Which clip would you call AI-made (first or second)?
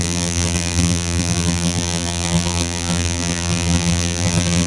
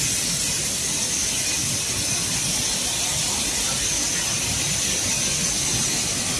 first